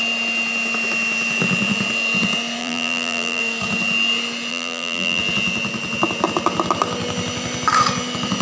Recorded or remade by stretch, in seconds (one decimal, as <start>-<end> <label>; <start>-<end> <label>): 0.0-2.6 recorded; 2.6-3.4 remade; 3.4-4.5 recorded; 4.5-5.2 remade; 5.2-8.4 recorded